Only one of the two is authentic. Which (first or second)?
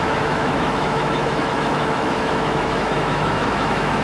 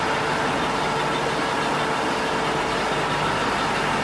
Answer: second